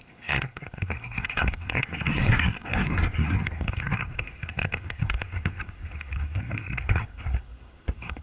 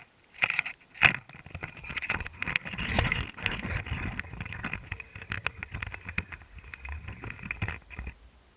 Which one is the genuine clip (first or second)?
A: second